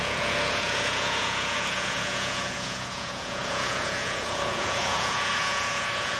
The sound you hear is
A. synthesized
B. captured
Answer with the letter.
A